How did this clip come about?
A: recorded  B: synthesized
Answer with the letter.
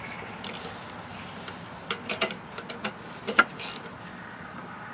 A